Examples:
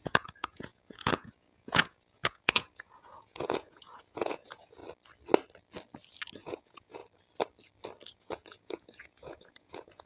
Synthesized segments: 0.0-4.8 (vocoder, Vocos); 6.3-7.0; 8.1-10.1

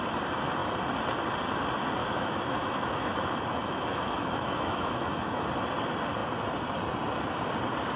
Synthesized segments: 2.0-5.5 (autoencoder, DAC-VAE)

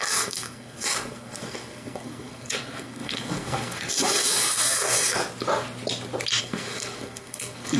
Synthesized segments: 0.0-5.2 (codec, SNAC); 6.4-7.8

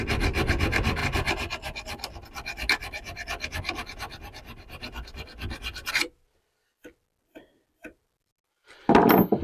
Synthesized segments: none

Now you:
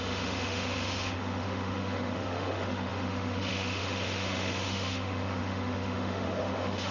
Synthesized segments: 0.0-6.9 (autoencoder, DAC-VAE)